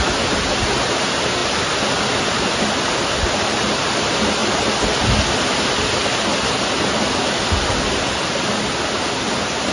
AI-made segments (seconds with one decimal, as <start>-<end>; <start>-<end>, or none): none